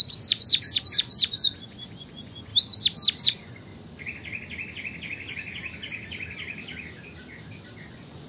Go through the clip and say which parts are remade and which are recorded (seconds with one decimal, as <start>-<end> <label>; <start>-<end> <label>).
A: 0.0-2.5 remade; 2.5-3.2 recorded; 3.2-3.7 remade; 3.7-7.9 recorded; 7.9-8.3 remade